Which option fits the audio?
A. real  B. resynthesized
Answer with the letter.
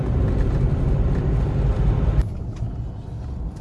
A